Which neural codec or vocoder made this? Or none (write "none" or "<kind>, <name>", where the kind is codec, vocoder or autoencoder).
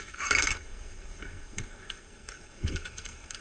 codec, SNAC